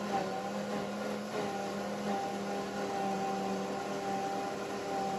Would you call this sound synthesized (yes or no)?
no